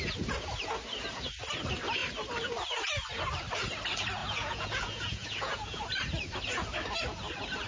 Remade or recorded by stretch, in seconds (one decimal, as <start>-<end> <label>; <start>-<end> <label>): 0.0-4.2 recorded; 4.2-5.8 remade; 5.8-7.7 recorded